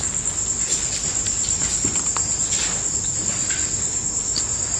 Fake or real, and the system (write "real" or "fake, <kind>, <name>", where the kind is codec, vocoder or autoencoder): real